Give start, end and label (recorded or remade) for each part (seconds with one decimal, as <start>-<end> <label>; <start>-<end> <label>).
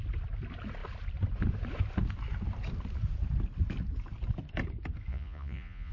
0.0-5.1 recorded; 5.1-5.9 remade